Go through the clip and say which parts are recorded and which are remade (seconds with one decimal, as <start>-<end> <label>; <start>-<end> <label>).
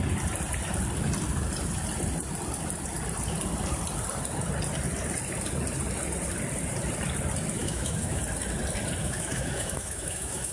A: 0.0-7.6 recorded; 7.6-8.2 remade; 8.2-9.0 recorded; 9.0-10.5 remade